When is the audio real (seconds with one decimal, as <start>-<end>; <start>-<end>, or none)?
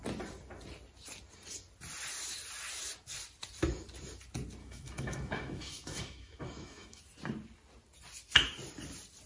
0.0-4.6; 7.0-9.3